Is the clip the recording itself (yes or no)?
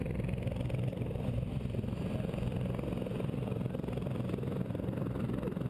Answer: no